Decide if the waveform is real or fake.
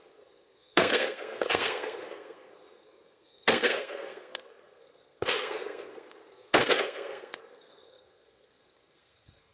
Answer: fake